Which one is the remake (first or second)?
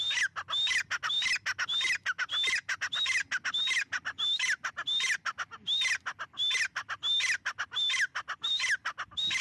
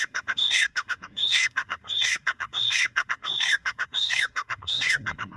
second